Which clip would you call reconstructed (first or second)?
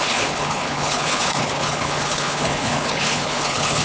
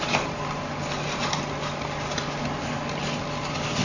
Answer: first